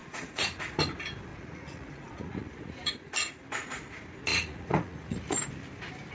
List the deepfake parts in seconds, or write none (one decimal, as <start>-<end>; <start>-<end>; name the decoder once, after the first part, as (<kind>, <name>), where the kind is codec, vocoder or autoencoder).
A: 0.0-0.7 (vocoder, Vocos); 1.3-3.1; 4.3-5.5